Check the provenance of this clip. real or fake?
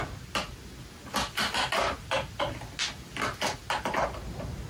real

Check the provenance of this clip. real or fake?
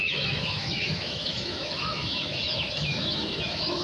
fake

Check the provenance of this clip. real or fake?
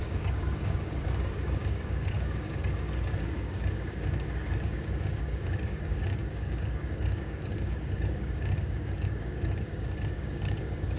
fake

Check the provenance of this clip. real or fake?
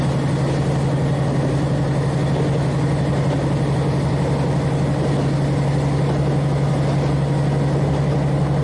real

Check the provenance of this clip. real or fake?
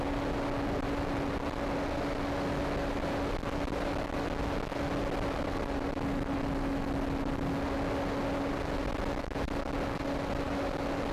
real